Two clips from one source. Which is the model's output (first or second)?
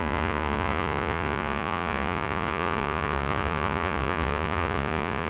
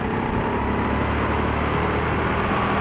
first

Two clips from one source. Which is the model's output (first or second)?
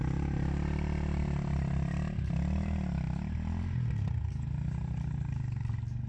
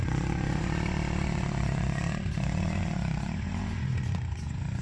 second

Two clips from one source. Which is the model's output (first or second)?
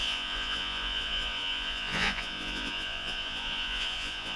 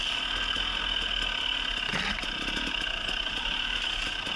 first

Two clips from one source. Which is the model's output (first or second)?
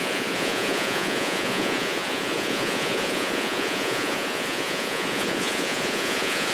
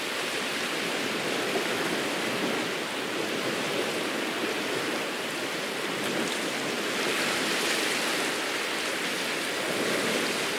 first